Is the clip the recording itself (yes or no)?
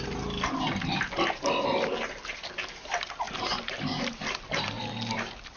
yes